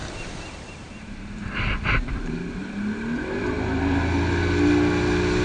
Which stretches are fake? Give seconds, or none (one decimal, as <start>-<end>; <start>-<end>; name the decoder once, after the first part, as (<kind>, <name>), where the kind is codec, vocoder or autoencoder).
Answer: 0.0-2.5 (vocoder, BigVGAN v2)